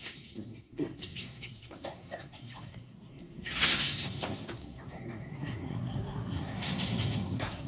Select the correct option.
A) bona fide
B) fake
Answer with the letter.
B